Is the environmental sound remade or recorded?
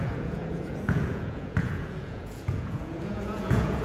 remade